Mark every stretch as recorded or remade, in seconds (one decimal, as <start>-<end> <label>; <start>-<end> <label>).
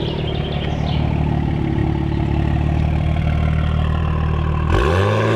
0.0-5.4 recorded